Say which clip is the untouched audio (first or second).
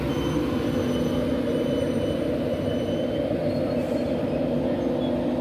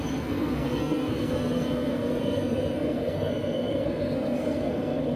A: first